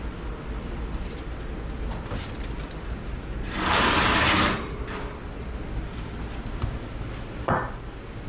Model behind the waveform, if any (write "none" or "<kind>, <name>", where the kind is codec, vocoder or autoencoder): none